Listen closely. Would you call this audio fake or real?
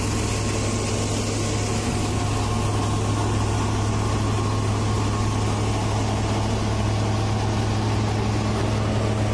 real